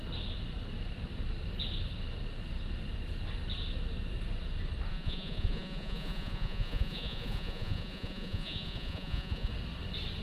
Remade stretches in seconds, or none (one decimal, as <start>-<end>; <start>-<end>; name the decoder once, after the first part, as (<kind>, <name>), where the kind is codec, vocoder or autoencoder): 4.9-9.5 (vocoder, Vocos)